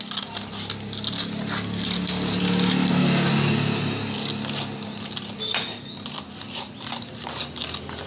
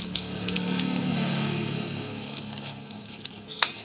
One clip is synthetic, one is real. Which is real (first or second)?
first